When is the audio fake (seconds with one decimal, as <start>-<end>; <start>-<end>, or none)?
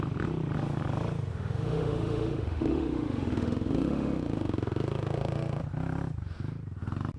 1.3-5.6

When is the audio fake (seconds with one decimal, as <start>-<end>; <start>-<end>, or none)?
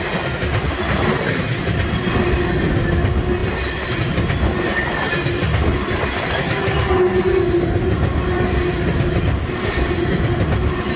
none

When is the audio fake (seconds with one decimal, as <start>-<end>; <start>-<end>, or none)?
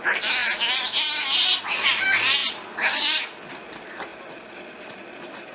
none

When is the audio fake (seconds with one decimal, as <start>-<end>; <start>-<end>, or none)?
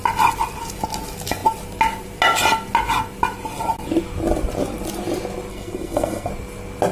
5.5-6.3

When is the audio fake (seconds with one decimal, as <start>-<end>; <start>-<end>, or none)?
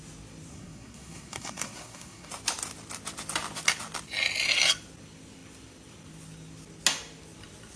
0.5-2.3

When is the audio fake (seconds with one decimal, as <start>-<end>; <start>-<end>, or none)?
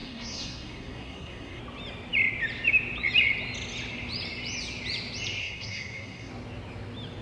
0.0-1.6; 5.4-6.3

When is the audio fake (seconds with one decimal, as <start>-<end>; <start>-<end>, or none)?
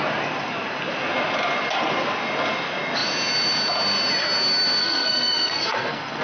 4.8-6.2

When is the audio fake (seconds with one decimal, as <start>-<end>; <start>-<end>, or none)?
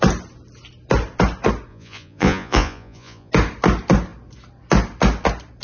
1.7-3.3